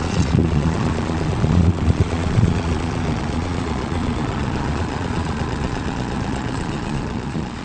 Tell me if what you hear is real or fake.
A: fake